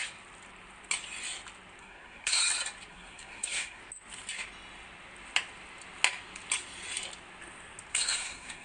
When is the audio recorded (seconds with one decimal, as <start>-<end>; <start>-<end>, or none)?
0.0-1.8; 2.4-2.9; 3.8-7.9